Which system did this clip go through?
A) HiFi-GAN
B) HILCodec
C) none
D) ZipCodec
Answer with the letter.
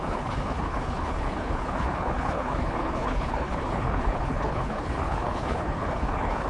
B